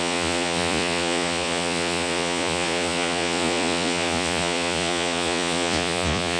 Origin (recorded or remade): remade